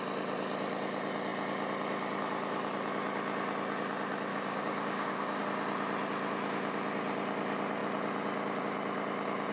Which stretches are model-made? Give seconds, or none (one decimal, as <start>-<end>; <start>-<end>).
4.3-5.4